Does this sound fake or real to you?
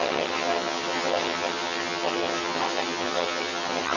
fake